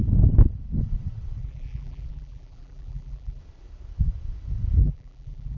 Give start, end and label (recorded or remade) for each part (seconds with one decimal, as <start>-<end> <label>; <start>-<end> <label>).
0.0-1.4 recorded; 1.4-3.4 remade; 3.4-4.8 recorded; 4.8-5.6 remade